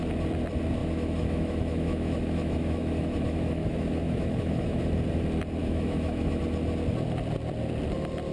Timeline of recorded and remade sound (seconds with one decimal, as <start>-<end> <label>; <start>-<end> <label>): 0.0-0.8 recorded; 0.8-4.8 remade; 4.8-5.6 recorded; 5.6-6.4 remade; 6.4-8.3 recorded